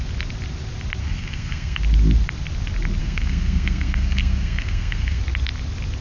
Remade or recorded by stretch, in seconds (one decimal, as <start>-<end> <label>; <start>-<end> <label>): 0.0-1.0 recorded; 1.0-1.8 remade; 1.8-3.0 recorded; 3.0-5.2 remade; 5.2-6.0 recorded